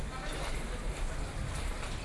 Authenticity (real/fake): real